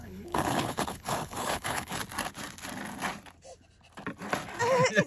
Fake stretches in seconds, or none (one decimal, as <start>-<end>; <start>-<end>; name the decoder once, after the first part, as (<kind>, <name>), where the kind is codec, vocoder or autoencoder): 0.0-1.9 (codec, HILCodec)